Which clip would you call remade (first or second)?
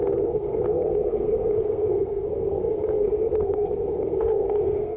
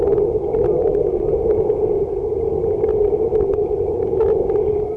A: first